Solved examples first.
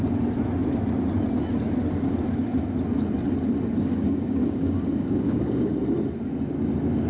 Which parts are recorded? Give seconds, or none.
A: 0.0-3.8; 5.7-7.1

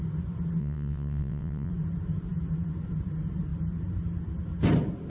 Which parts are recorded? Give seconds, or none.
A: 0.0-0.6; 1.7-5.1

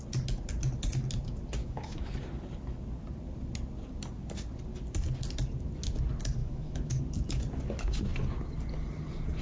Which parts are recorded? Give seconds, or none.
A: 0.0-1.6; 2.1-6.4; 7.0-9.4

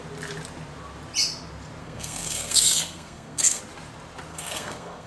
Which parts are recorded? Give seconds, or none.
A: 0.0-1.8; 3.6-4.3

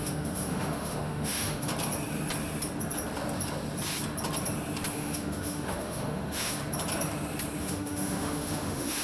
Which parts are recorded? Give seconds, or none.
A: 1.7-4.9; 6.6-7.6

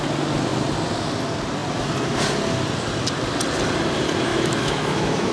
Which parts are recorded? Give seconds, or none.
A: 0.0-4.3

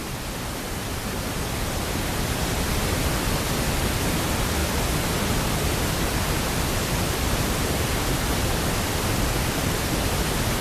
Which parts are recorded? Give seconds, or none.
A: 0.0-6.1; 7.9-10.6

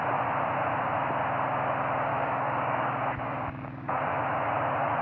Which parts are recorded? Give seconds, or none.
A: 0.0-2.1; 4.0-5.0